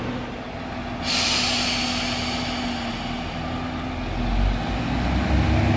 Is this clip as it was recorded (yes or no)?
yes